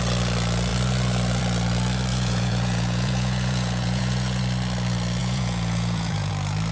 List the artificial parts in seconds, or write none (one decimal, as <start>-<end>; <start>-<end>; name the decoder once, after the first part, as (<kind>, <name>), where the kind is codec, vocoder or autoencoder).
2.1-4.4 (vocoder, Vocos); 5.2-6.3